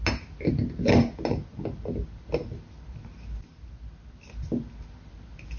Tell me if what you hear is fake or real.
real